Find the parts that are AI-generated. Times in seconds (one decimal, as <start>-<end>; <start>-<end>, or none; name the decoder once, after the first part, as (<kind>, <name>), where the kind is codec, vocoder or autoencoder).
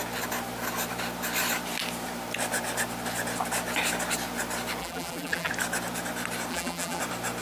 4.8-5.5 (vocoder, BigVGAN v2); 6.5-7.0